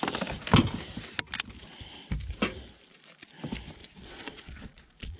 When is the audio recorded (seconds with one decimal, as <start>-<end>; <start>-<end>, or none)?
0.0-3.8